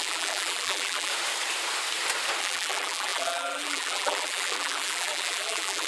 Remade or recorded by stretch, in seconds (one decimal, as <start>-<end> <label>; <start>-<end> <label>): 0.0-1.1 remade; 1.1-2.4 recorded; 2.4-5.9 remade